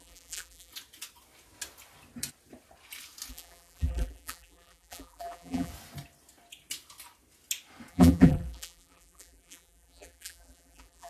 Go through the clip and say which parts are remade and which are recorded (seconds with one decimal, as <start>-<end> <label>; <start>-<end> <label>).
0.0-0.7 remade; 0.7-3.3 recorded; 3.3-5.7 remade; 5.7-7.9 recorded; 7.9-11.1 remade